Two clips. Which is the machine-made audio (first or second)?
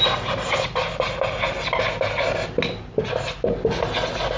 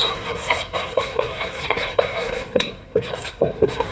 second